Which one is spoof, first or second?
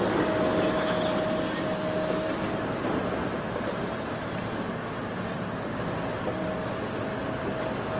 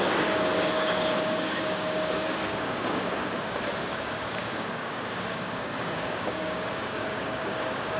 second